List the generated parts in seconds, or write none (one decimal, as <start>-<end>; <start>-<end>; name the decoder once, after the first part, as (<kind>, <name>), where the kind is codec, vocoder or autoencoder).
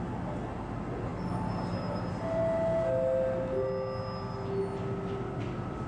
none